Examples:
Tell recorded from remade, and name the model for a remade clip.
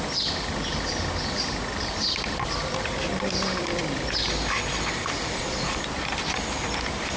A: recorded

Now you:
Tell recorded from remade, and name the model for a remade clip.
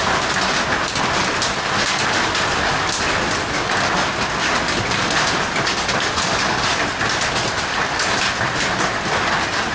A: recorded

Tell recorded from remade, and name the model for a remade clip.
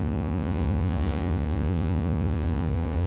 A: remade, vocoder, Vocos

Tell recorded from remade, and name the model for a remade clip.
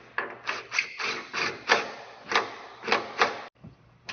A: recorded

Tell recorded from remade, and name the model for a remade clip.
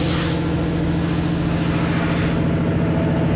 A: recorded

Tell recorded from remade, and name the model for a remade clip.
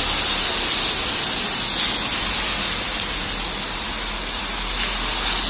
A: recorded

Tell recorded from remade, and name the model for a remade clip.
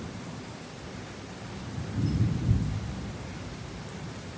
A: recorded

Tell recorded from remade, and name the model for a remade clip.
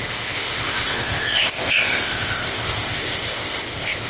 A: remade, codec, ZipCodec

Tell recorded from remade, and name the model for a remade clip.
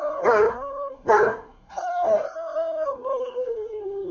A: remade, codec, SNAC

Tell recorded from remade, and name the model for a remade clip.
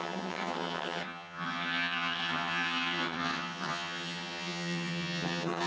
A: remade, vocoder, HiFi-GAN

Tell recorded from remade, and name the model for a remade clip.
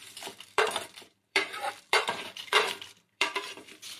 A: remade, vocoder, BigVGAN v2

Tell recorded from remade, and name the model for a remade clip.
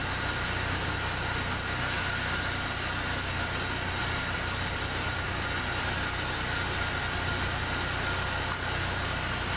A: recorded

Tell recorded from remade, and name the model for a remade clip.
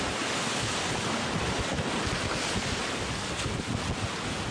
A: recorded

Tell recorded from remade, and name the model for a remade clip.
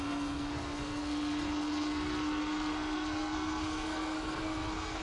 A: remade, codec, SNAC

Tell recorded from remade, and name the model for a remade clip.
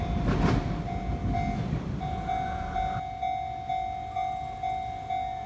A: recorded